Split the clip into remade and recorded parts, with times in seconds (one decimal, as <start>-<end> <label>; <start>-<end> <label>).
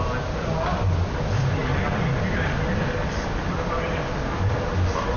0.0-5.2 recorded